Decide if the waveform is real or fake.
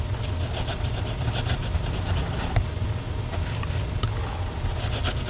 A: real